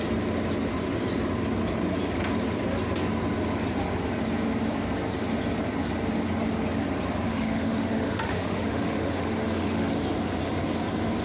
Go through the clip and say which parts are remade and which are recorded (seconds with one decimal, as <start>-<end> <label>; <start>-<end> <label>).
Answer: 0.0-7.3 recorded; 7.3-9.9 remade; 9.9-11.2 recorded